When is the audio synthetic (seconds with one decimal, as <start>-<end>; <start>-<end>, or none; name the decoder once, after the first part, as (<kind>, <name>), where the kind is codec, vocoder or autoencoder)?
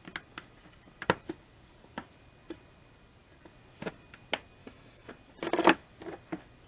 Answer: 4.6-5.1 (autoencoder, DAC-VAE)